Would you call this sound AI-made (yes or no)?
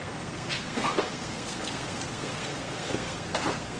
yes